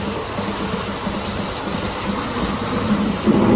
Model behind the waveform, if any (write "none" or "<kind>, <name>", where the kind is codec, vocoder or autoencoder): none